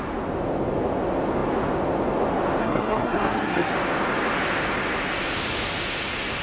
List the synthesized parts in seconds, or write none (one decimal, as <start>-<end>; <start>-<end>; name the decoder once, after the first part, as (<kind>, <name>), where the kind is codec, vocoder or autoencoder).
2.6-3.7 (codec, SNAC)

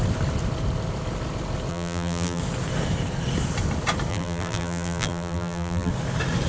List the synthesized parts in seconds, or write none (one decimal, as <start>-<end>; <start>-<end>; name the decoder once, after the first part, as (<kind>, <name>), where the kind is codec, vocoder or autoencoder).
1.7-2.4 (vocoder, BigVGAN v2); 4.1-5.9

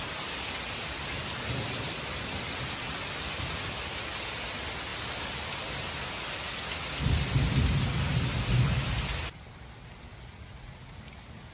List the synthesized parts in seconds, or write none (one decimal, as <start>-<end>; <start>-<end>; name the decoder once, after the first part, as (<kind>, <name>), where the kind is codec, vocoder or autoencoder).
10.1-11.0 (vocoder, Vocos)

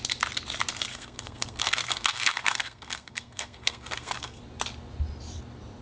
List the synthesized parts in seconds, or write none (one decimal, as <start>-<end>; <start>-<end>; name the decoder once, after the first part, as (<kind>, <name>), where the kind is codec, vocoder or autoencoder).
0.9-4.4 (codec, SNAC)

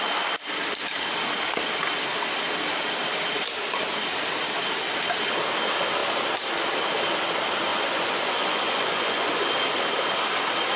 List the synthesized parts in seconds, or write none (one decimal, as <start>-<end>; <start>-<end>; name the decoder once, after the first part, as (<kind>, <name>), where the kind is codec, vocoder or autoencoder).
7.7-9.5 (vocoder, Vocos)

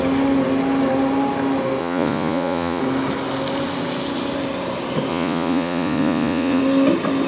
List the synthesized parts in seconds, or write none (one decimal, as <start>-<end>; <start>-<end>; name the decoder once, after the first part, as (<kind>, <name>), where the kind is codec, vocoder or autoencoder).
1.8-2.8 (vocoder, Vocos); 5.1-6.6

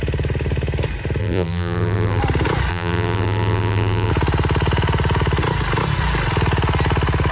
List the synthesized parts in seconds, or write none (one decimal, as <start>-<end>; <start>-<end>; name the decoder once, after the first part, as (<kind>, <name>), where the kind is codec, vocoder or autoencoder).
1.2-2.2 (vocoder, BigVGAN v2); 2.7-4.1

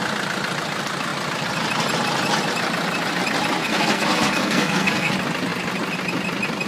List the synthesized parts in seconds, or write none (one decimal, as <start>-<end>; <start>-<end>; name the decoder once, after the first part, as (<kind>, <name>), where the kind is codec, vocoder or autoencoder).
3.6-5.1 (codec, SNAC)